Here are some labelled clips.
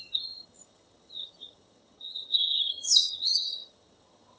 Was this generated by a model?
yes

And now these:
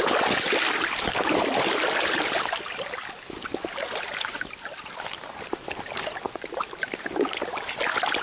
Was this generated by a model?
no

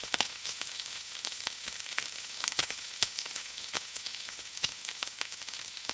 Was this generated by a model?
yes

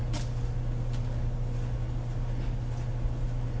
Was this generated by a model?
no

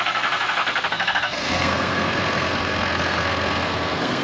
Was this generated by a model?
yes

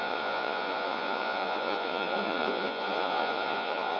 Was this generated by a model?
yes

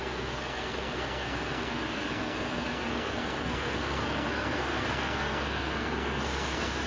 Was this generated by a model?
yes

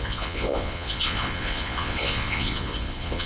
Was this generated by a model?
yes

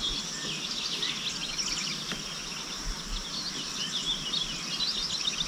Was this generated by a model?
no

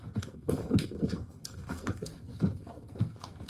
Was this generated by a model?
yes